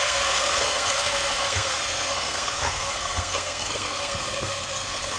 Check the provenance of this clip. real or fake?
fake